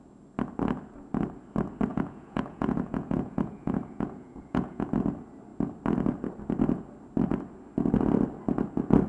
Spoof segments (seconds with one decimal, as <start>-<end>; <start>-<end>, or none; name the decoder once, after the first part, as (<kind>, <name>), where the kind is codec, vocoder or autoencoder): 1.9-4.9 (vocoder, Vocos)